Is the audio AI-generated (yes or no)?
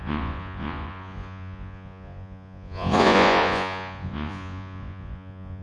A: yes